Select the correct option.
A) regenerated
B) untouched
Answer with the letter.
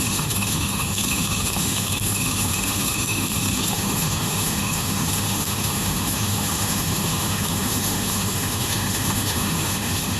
A